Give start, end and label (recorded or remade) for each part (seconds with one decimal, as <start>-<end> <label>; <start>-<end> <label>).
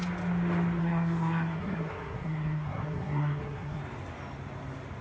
0.0-0.8 recorded; 0.8-3.8 remade; 3.8-5.0 recorded